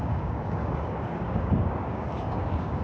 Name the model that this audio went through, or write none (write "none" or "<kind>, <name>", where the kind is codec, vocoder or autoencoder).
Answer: codec, DAC